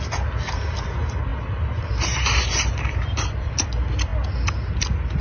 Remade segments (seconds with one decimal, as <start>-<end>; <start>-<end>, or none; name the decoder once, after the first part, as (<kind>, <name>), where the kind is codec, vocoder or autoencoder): 1.3-3.5 (vocoder, BigVGAN v2)